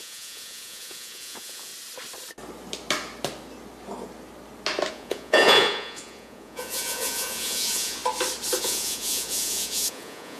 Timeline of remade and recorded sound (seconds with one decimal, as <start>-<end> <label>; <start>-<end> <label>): 0.0-1.7 remade; 1.7-4.9 recorded; 4.9-8.0 remade; 8.0-8.6 recorded; 8.6-10.4 remade